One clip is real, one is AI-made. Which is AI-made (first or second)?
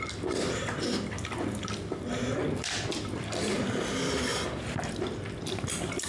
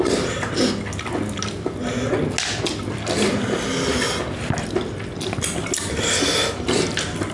first